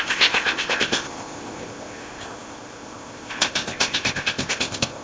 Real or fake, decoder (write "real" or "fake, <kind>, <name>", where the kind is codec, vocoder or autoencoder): fake, codec, ZipCodec